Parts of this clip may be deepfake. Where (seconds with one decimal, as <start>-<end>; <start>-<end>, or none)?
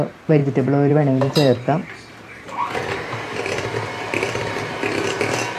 0.0-0.4; 0.9-5.6